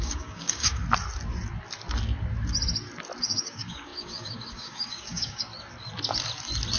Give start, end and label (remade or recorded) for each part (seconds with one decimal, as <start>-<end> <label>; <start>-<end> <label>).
0.0-0.8 remade; 0.8-3.2 recorded; 3.2-5.5 remade; 5.5-6.8 recorded